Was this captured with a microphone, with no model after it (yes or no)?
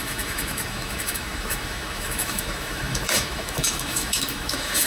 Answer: no